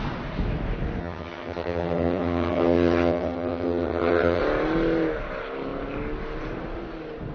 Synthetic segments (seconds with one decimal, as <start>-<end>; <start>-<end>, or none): 1.0-4.4